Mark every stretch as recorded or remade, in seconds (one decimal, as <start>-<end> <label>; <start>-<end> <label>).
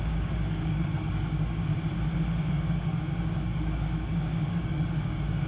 0.0-1.7 remade; 1.7-2.5 recorded; 2.5-5.5 remade